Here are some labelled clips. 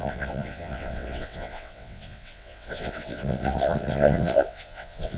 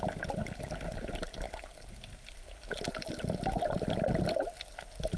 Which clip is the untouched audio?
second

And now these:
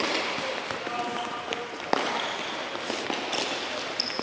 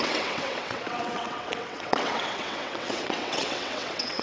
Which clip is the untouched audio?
first